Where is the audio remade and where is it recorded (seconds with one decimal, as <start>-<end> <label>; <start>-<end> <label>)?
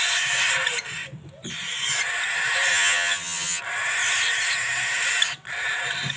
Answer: 0.0-2.7 recorded; 2.7-3.6 remade; 3.6-6.2 recorded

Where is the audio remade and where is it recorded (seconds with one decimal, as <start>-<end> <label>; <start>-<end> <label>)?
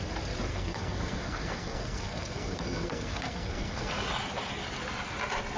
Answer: 0.0-0.5 recorded; 0.5-3.9 remade; 3.9-5.6 recorded